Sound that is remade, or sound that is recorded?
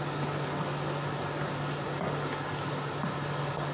recorded